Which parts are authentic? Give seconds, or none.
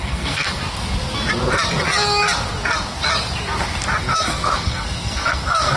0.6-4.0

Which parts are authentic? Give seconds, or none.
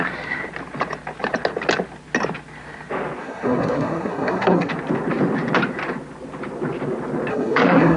0.0-3.2; 4.7-7.3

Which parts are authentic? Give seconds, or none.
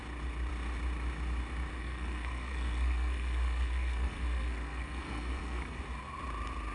0.0-1.8; 5.8-6.7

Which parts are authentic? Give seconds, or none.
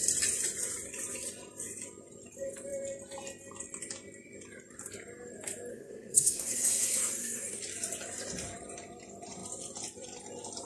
0.0-5.7; 7.6-10.6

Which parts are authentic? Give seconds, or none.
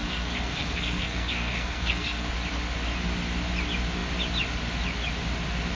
2.3-5.7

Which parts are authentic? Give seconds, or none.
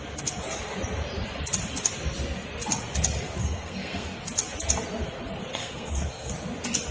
0.0-3.4; 4.2-5.5; 6.3-6.9